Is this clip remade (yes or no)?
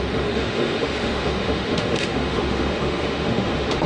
yes